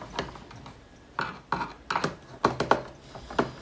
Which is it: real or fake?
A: real